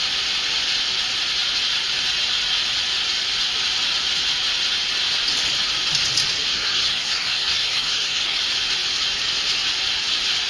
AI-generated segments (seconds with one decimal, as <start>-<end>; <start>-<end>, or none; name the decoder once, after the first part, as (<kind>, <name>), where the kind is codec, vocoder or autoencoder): 6.5-8.4 (codec, SNAC)